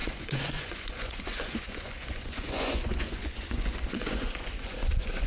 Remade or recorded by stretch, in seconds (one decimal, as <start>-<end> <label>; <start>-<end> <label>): 0.0-5.3 remade

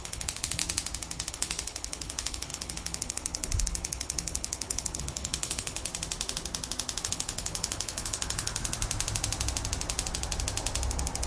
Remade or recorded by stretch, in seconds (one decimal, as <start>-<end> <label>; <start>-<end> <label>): 0.0-0.6 remade; 0.6-1.3 recorded; 1.3-5.9 remade; 5.9-7.0 recorded; 7.0-8.6 remade; 8.6-11.3 recorded

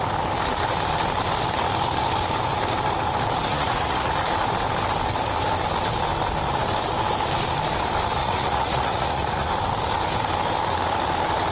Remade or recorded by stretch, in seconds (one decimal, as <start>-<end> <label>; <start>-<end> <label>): 0.0-3.5 recorded; 3.5-4.1 remade; 4.1-8.2 recorded; 8.2-9.5 remade; 9.5-11.5 recorded

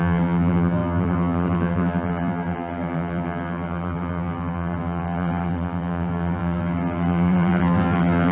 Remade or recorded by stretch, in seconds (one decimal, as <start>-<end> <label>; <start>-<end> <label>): 0.0-8.3 remade

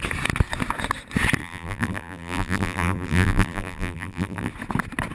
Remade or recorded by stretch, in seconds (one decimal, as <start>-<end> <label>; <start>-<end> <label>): 0.0-1.4 recorded; 1.4-4.5 remade; 4.5-5.1 recorded

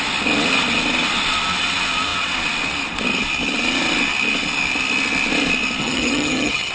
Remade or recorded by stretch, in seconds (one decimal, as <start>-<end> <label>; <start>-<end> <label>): 0.0-5.8 recorded; 5.8-6.7 remade

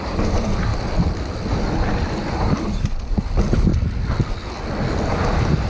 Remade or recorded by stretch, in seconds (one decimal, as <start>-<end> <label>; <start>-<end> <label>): 0.0-0.7 remade; 0.7-1.7 recorded; 1.7-3.7 remade; 3.7-5.1 recorded; 5.1-5.7 remade

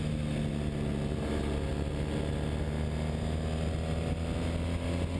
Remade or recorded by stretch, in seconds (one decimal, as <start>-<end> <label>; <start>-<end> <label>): 0.0-5.2 recorded